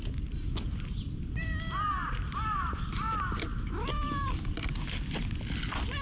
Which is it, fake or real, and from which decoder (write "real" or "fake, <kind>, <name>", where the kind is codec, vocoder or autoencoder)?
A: real